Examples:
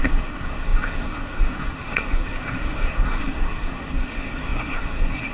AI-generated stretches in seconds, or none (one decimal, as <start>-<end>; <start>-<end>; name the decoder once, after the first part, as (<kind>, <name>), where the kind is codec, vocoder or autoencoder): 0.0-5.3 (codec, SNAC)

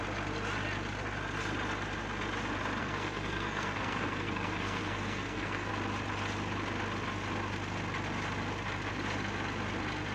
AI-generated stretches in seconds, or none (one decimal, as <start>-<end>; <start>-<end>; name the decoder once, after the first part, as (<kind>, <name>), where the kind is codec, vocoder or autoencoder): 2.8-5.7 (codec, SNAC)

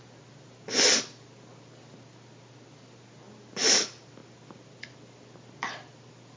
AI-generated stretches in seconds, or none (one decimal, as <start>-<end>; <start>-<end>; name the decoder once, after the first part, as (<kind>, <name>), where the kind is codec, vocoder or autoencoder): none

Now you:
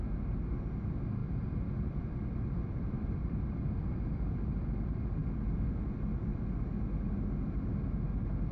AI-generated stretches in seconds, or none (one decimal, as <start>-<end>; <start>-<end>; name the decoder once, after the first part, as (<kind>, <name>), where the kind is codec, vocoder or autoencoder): 1.2-4.0 (vocoder, BigVGAN v2)

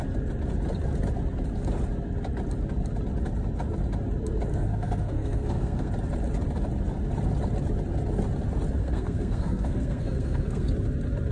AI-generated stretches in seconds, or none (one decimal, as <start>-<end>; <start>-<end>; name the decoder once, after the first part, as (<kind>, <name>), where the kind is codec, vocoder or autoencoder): 4.5-5.9 (codec, SNAC); 8.8-10.7

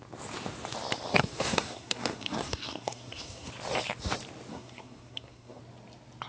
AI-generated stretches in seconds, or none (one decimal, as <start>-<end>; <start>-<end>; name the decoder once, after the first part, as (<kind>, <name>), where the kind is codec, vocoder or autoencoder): 1.1-3.5 (codec, SNAC); 4.5-5.6

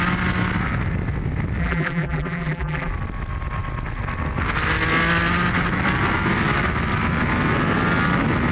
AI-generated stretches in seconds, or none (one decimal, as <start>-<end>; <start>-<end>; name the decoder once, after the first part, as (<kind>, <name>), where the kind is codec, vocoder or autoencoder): 1.6-2.9 (vocoder, BigVGAN v2)